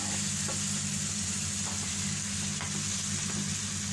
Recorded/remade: recorded